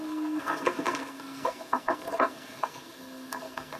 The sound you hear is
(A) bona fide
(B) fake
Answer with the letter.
B